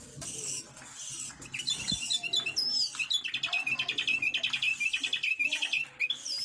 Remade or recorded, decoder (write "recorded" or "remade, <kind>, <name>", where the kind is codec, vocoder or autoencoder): recorded